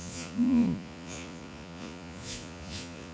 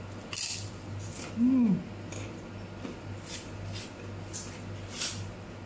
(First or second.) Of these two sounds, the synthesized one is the first